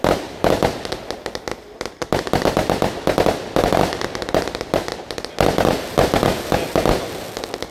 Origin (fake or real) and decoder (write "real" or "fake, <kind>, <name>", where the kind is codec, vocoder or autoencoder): real